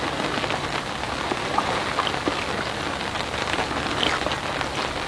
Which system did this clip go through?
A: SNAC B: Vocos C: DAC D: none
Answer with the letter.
D